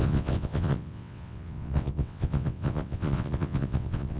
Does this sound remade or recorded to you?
remade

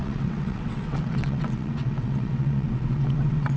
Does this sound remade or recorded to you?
remade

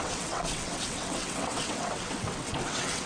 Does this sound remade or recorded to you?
remade